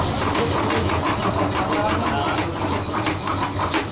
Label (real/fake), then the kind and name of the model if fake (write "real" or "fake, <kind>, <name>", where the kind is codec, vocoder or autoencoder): real